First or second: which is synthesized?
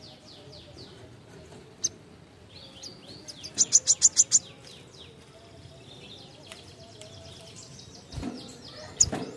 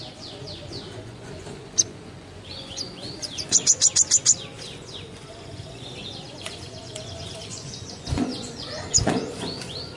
second